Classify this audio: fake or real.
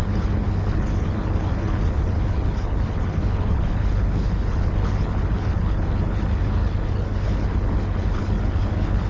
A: fake